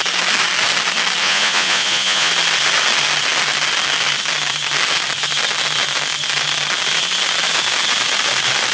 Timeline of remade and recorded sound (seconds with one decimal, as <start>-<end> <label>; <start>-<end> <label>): 0.0-1.2 recorded; 1.2-2.3 remade; 2.3-8.7 recorded